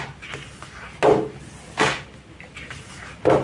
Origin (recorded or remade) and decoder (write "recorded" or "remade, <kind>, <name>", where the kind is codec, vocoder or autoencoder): recorded